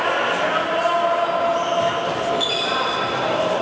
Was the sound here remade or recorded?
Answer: recorded